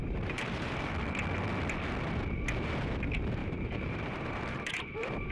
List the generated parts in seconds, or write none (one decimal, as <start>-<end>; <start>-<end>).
0.0-0.9; 3.4-5.3